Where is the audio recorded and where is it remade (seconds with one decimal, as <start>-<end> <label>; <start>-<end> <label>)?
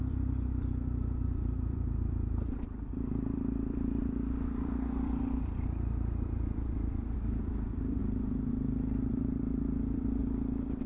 0.0-8.0 remade; 8.0-8.5 recorded; 8.5-10.2 remade; 10.2-10.9 recorded